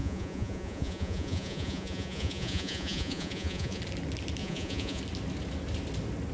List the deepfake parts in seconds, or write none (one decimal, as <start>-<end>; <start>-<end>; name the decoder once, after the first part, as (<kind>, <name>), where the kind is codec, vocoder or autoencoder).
0.0-3.8 (vocoder, Vocos); 4.4-5.0